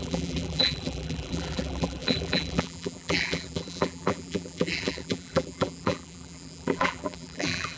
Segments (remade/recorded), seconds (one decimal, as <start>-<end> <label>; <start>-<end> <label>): 0.0-7.8 remade